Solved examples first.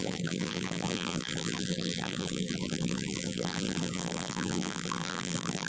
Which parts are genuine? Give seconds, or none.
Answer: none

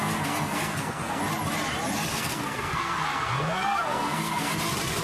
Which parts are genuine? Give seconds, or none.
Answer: 1.2-2.1; 4.5-5.0

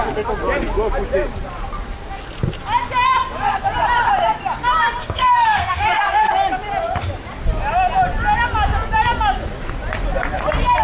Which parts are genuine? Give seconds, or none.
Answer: 0.0-5.0; 6.3-10.8

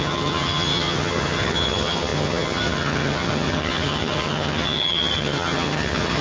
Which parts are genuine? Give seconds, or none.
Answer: none

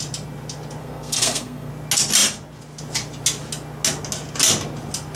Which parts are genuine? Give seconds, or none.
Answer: 0.0-0.8; 1.7-5.2

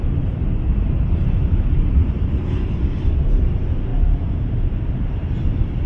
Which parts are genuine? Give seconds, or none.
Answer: none